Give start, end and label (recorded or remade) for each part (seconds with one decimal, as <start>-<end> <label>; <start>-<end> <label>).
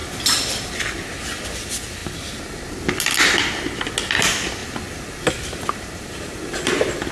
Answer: 0.0-7.1 recorded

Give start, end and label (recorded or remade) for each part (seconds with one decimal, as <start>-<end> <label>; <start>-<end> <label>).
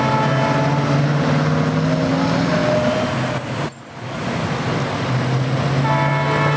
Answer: 0.0-6.6 recorded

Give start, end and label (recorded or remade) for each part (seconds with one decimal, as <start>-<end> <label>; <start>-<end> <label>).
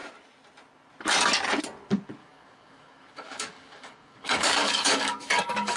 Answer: 0.0-2.2 recorded; 2.2-5.8 remade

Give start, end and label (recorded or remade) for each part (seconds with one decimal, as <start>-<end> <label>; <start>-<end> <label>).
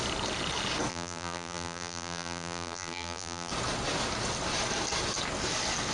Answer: 0.0-0.9 recorded; 0.9-3.5 remade; 3.5-5.9 recorded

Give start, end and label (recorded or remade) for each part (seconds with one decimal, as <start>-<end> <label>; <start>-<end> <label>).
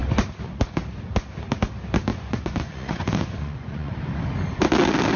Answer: 0.0-2.1 recorded; 2.1-3.9 remade; 3.9-5.2 recorded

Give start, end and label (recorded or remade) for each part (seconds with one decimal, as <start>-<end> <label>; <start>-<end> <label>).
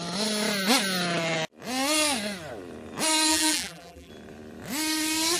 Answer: 0.0-3.3 recorded; 3.3-4.1 remade; 4.1-5.4 recorded